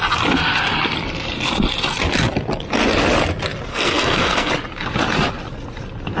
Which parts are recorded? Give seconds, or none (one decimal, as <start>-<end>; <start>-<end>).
0.0-3.7; 4.5-6.2